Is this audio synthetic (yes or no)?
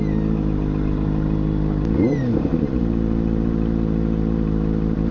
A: no